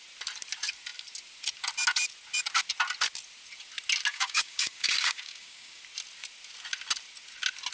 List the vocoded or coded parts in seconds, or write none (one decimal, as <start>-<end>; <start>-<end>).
4.1-5.8